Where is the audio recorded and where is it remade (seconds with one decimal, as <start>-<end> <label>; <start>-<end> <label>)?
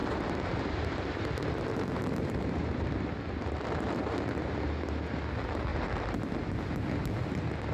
0.0-4.6 remade; 4.6-5.7 recorded; 5.7-6.3 remade; 6.3-7.7 recorded